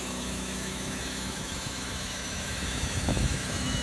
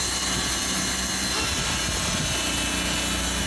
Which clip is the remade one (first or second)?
first